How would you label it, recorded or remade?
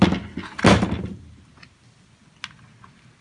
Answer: recorded